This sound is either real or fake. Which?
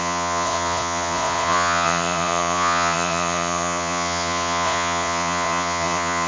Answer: fake